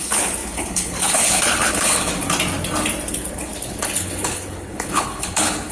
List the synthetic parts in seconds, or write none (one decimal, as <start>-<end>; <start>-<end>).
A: 0.0-2.1; 3.1-5.7